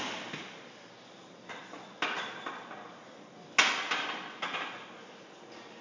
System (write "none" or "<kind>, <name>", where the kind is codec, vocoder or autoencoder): none